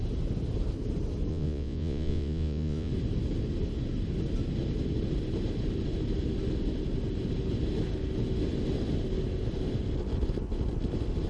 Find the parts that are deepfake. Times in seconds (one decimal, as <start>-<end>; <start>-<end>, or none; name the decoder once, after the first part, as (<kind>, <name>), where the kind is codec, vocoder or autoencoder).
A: 1.3-2.9 (vocoder, Vocos)